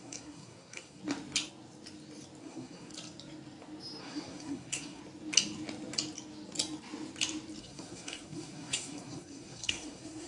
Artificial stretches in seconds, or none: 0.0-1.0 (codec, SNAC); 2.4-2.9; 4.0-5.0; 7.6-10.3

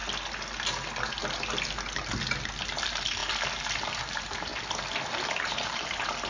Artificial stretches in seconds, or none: 2.8-3.2 (vocoder, BigVGAN v2); 4.0-4.5; 5.3-6.3

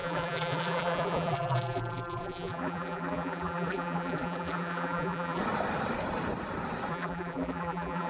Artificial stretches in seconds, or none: 0.0-5.4 (vocoder, BigVGAN v2); 6.9-8.1

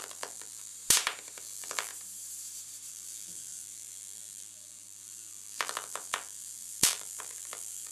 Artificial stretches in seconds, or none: 0.0-0.7 (vocoder, BigVGAN v2); 1.4-1.9; 2.9-7.9